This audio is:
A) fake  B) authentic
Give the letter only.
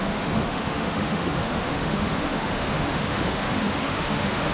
A